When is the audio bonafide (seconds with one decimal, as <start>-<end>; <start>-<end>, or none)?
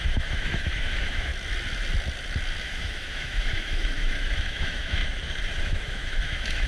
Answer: 1.3-2.6; 5.0-5.6